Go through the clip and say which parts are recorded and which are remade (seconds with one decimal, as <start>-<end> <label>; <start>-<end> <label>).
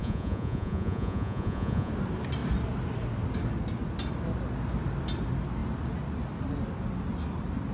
0.0-1.9 remade; 1.9-7.7 recorded